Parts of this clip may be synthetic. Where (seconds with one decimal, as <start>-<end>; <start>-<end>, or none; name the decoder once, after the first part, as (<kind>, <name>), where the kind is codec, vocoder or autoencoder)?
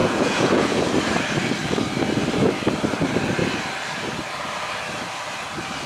0.0-0.9 (vocoder, Vocos)